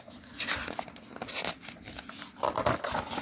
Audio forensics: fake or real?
real